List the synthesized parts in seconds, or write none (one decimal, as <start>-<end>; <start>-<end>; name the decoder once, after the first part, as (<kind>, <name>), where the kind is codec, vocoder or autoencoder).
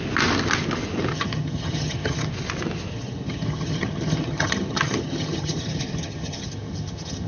1.1-2.3 (vocoder, HiFi-GAN); 2.9-7.3